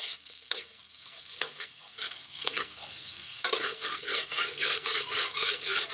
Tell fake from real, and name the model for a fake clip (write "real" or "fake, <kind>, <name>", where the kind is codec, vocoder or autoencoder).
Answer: fake, codec, SNAC